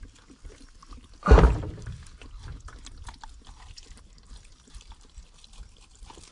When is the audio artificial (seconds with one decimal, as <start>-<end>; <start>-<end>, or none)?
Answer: 0.0-0.8; 1.4-2.5; 4.3-6.3